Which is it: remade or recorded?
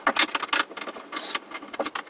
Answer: recorded